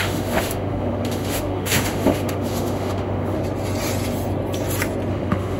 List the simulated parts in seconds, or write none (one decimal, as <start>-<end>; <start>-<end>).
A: 0.0-3.4; 5.1-5.6